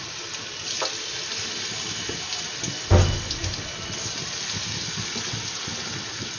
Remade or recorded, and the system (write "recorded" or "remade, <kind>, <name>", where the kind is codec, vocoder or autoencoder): recorded